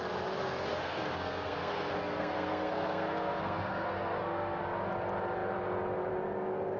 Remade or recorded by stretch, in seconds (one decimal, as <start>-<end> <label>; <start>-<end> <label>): 0.0-0.7 recorded; 0.7-4.6 remade; 4.6-6.8 recorded